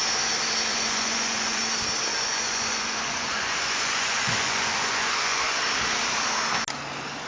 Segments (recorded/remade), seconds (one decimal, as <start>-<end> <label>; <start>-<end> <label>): 0.0-0.7 recorded; 0.7-1.6 remade; 1.6-2.1 recorded; 2.1-5.6 remade; 5.6-7.3 recorded